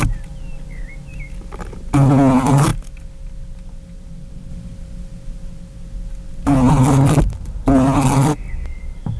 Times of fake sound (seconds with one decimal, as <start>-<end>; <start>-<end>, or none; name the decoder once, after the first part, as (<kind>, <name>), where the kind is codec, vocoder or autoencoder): none